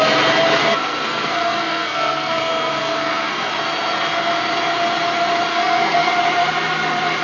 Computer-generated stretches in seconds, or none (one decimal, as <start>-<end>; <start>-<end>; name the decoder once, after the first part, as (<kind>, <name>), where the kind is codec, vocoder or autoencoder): 0.6-3.5 (codec, SNAC); 5.5-6.1